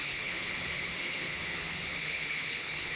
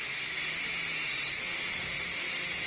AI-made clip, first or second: first